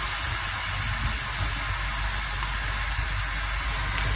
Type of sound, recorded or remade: recorded